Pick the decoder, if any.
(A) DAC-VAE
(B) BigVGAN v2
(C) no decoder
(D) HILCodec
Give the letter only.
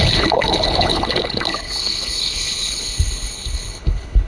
D